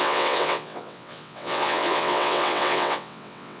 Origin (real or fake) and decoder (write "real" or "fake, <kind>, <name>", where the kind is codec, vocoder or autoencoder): fake, vocoder, WaveNeXt